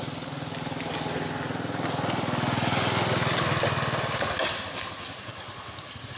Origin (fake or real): real